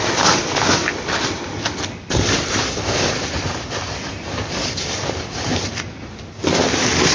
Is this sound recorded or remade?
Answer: recorded